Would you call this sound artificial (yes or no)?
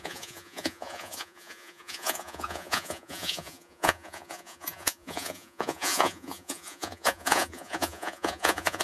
yes